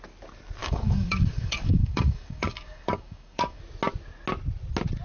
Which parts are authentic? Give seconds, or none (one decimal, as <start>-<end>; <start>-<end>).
0.0-0.6; 3.6-5.0